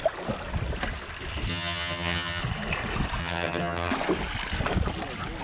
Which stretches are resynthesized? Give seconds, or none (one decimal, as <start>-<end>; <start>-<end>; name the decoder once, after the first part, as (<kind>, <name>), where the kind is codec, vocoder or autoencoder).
1.5-2.4 (vocoder, HiFi-GAN); 3.2-3.9